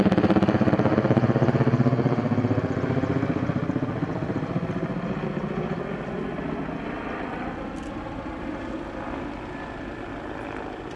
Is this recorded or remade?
recorded